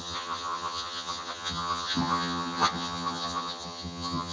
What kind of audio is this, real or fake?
fake